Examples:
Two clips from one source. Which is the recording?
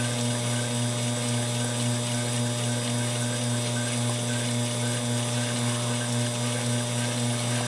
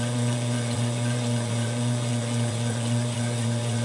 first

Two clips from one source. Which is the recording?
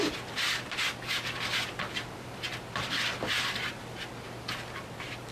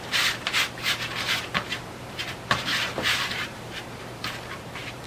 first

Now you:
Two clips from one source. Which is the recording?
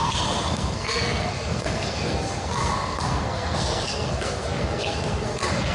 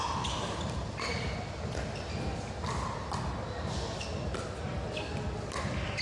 second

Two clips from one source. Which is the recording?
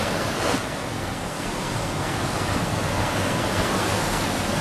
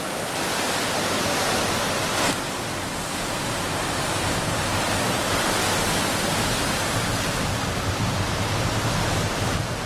second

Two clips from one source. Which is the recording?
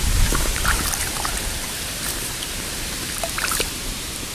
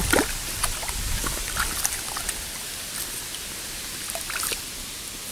second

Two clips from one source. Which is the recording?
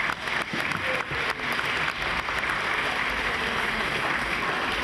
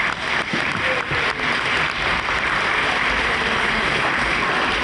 first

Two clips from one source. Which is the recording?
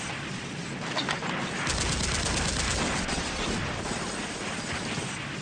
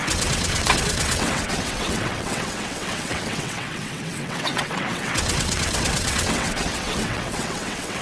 first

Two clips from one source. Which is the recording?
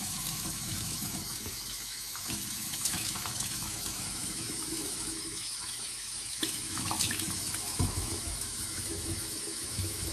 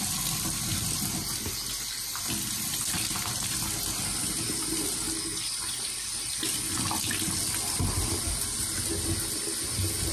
second